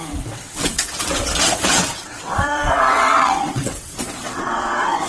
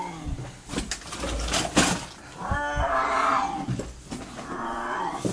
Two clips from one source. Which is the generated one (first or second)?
first